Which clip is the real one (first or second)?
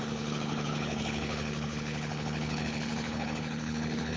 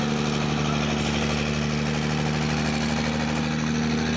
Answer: second